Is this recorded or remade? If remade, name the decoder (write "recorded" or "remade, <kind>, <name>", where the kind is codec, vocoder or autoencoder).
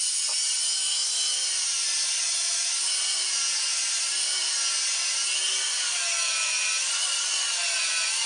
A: recorded